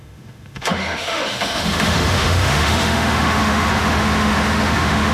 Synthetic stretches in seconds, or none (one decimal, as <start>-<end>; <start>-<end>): 0.0-5.1